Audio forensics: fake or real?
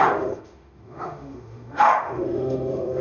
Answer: fake